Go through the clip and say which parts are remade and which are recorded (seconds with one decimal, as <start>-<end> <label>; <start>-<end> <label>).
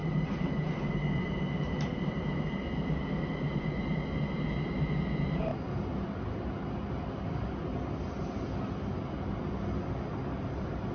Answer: 0.0-4.5 remade; 4.5-10.9 recorded